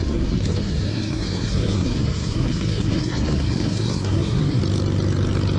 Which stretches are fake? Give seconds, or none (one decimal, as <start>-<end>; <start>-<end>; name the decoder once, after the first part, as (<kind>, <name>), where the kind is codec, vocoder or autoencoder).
0.0-4.6 (codec, SNAC)